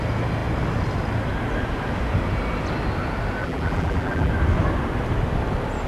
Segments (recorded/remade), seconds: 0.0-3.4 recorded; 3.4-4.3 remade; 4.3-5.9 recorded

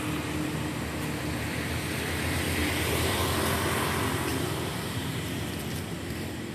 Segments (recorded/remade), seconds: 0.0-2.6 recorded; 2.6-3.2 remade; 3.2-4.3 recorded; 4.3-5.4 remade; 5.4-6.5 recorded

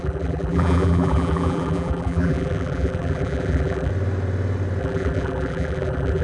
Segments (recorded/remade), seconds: 0.0-3.9 remade; 3.9-4.8 recorded; 4.8-6.2 remade

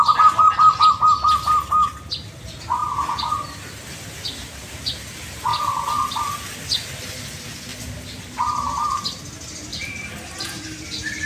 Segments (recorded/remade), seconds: 0.0-7.7 recorded; 7.7-9.2 remade; 9.2-9.7 recorded; 9.7-10.9 remade; 10.9-11.3 recorded